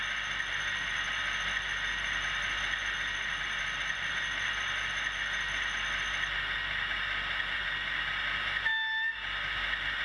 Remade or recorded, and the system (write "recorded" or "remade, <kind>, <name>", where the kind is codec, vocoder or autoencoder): recorded